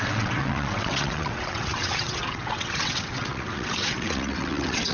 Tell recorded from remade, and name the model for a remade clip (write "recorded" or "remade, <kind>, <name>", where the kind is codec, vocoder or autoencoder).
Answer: remade, vocoder, WaveNeXt